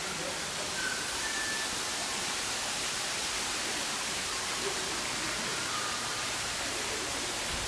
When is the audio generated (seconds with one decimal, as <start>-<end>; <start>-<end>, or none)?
2.0-5.0; 5.5-7.3